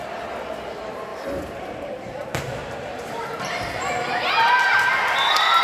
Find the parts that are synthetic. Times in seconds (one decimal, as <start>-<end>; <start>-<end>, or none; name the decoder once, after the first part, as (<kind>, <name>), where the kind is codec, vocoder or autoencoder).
1.1-4.5 (vocoder, BigVGAN v2)